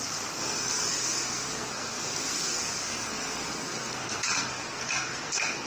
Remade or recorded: remade